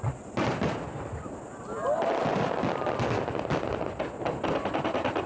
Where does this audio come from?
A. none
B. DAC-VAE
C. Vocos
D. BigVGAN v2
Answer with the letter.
A